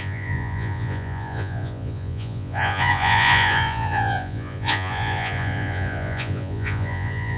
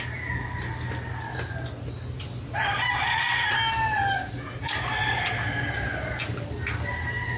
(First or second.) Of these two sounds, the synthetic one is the first